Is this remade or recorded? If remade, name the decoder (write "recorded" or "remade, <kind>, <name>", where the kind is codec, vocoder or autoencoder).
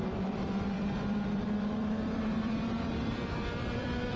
remade, vocoder, BigVGAN v2